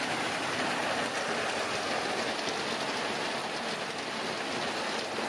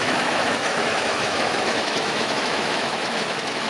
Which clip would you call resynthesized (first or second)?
second